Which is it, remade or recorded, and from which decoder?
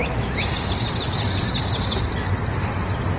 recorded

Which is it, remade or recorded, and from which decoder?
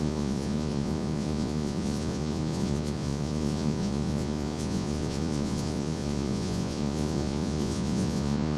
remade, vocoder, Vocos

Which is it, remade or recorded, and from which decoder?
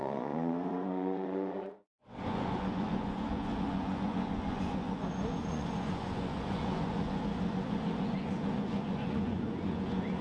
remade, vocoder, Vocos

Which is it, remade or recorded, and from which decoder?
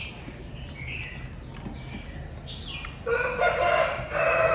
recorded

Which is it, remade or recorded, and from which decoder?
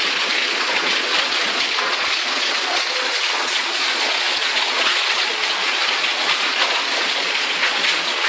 remade, vocoder, Vocos